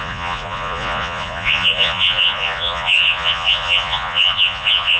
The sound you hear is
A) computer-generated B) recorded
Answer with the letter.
A